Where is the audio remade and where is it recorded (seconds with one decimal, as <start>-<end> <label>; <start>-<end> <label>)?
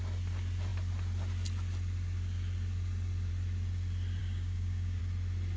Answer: 0.0-4.2 recorded; 4.2-5.0 remade; 5.0-5.6 recorded